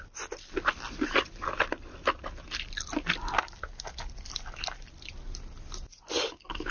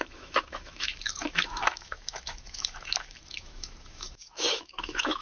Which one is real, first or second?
first